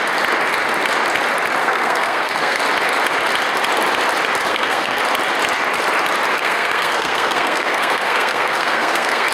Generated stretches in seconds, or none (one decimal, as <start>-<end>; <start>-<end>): 1.6-2.6; 4.5-5.0; 6.3-9.3